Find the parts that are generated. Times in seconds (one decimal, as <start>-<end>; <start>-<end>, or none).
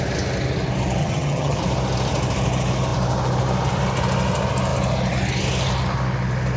1.0-1.6